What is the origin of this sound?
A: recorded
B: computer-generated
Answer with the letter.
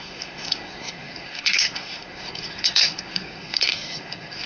B